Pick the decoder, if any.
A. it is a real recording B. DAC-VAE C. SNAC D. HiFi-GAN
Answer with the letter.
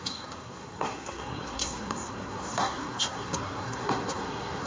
C